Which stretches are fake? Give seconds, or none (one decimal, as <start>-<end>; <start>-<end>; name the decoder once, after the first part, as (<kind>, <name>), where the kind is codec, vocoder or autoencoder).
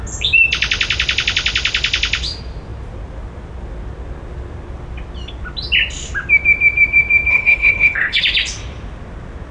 7.3-8.2 (codec, HILCodec)